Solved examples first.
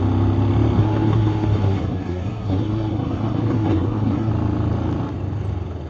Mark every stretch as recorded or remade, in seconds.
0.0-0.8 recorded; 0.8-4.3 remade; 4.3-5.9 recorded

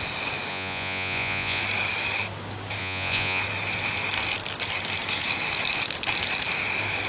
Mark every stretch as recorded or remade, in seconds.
0.0-0.5 recorded; 0.5-1.6 remade; 1.6-2.8 recorded; 2.8-3.4 remade; 3.4-7.1 recorded

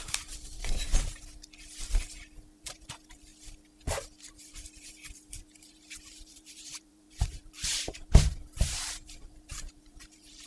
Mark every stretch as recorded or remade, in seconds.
0.0-0.9 remade; 0.9-2.6 recorded; 2.6-3.3 remade; 3.3-4.2 recorded; 4.2-10.5 remade